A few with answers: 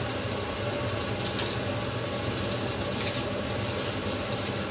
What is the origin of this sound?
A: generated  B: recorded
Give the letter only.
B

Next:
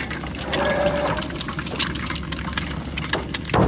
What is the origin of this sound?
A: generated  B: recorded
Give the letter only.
B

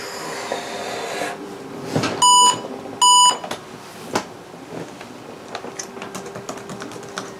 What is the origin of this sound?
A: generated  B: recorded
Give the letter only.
B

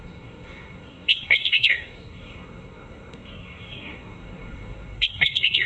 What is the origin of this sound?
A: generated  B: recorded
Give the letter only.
A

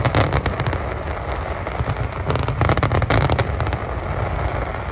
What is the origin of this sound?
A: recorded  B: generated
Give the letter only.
A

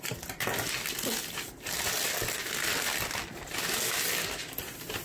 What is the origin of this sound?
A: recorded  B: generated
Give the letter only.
A